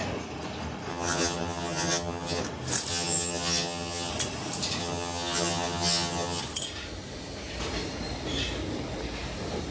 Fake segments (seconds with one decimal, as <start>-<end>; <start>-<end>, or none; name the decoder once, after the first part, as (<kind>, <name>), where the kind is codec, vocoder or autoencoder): 0.9-2.4 (vocoder, HiFi-GAN); 2.9-4.1; 4.8-6.4